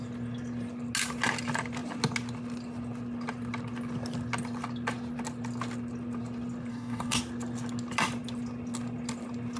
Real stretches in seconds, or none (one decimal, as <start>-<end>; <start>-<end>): 0.0-6.7; 7.2-9.6